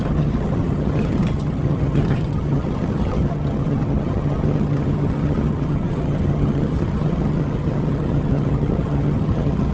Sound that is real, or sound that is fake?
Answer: fake